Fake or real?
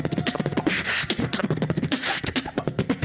fake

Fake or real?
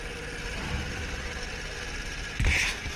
real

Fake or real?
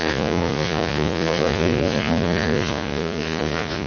fake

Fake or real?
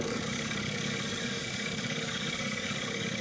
fake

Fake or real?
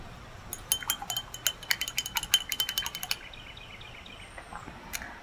real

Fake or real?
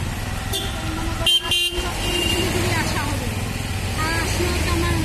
real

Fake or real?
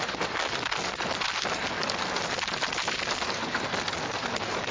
real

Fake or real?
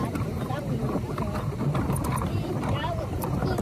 fake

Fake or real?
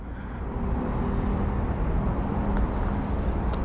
real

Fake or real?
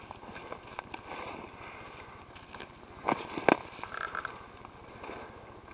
real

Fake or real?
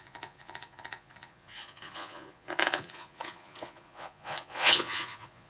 fake